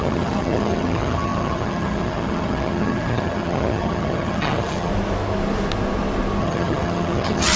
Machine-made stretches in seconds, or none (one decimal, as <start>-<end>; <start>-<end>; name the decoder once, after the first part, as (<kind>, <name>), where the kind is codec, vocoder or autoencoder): 0.0-4.9 (vocoder, HiFi-GAN); 6.4-7.6